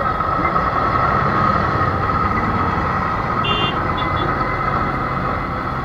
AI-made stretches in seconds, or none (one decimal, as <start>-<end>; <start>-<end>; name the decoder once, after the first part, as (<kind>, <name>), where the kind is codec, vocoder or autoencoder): 0.4-1.1 (vocoder, BigVGAN v2); 1.5-5.0